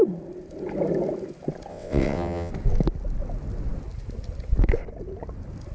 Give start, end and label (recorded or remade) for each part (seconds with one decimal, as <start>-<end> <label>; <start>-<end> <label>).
0.0-1.7 recorded; 1.7-2.5 remade; 2.5-5.7 recorded